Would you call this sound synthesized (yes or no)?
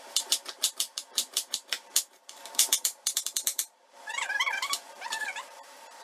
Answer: yes